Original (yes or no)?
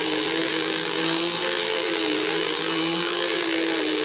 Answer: no